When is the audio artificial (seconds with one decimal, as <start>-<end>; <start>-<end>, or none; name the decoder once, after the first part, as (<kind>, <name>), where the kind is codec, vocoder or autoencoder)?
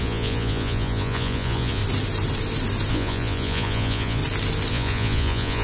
0.0-1.8 (vocoder, Vocos); 2.9-4.2; 4.7-5.6